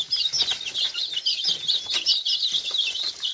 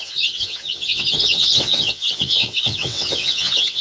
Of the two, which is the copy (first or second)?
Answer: second